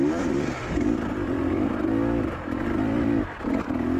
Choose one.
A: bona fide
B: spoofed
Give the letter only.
B